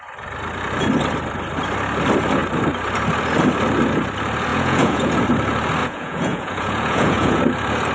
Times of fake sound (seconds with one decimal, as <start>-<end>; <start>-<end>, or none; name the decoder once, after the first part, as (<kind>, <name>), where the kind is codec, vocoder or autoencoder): 4.5-5.2 (vocoder, Vocos); 5.8-7.4